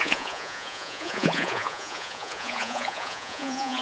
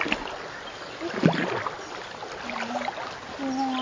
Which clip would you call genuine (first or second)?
second